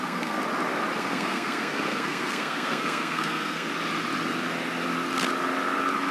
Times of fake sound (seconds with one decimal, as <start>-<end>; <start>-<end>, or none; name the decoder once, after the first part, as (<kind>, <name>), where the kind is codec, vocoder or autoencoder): 0.0-0.4 (codec, SNAC); 1.0-3.7